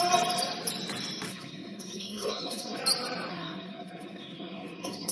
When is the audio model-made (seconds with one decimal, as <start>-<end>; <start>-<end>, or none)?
1.3-2.8; 3.3-5.1